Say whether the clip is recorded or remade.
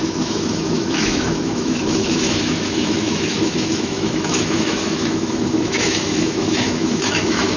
remade